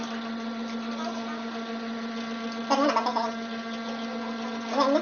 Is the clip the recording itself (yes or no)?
yes